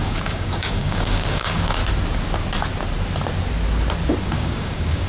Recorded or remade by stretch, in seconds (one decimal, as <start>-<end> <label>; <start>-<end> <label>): 0.0-1.8 remade; 1.8-4.2 recorded; 4.2-5.1 remade